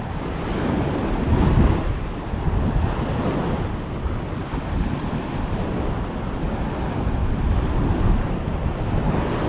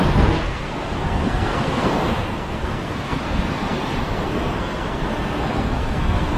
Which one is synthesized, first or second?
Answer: second